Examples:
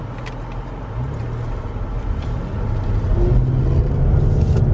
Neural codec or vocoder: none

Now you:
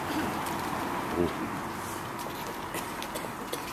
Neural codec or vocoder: none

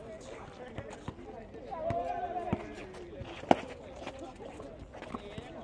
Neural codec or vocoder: none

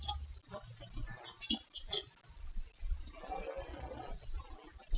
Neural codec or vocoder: none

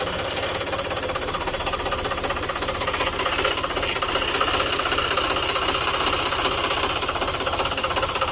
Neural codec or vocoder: none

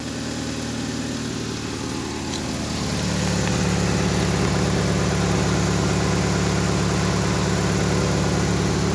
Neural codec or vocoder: none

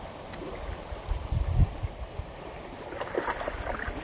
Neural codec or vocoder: none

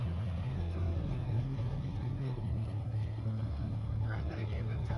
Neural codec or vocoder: codec, SNAC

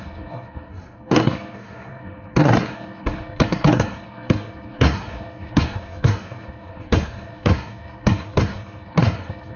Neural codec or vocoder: codec, SNAC